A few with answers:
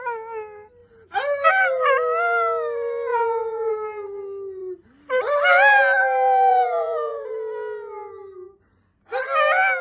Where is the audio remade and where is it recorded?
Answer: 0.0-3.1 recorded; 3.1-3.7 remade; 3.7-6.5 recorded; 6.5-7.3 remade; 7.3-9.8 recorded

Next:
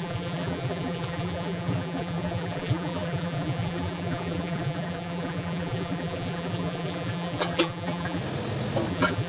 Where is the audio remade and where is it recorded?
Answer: 0.0-8.2 remade; 8.2-8.9 recorded; 8.9-9.3 remade